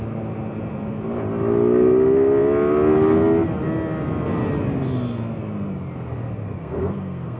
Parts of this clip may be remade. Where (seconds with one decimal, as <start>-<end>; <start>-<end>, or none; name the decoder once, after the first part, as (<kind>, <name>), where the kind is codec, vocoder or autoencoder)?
6.6-7.4 (codec, SNAC)